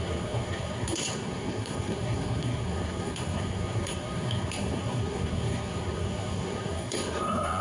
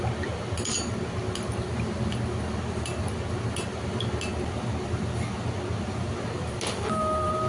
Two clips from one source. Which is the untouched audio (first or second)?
second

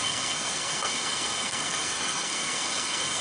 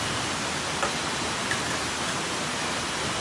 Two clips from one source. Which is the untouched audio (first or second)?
second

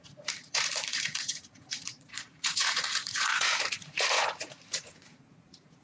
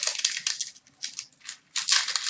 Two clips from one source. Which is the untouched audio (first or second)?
second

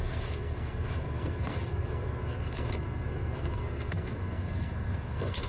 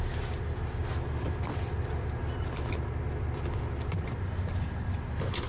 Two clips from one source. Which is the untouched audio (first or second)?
second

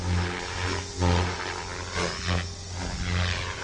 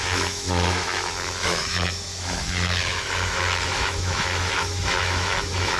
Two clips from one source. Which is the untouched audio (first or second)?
first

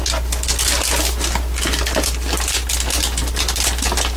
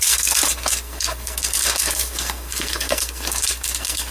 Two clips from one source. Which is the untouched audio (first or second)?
first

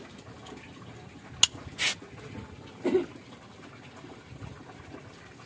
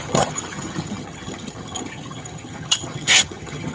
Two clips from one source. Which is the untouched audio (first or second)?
first